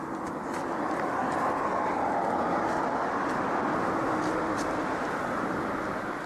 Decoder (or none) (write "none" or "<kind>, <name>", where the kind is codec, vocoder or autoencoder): none